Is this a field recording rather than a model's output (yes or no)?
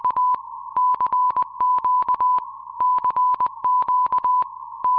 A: yes